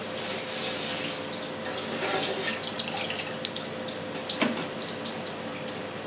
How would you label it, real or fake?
real